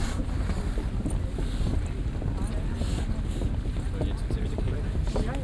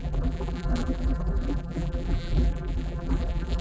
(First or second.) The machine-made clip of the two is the second